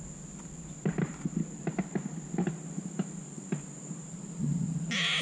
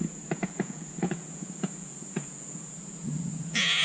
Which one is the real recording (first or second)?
first